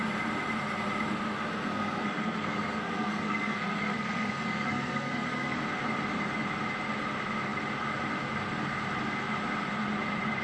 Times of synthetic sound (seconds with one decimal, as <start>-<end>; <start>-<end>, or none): 1.5-5.6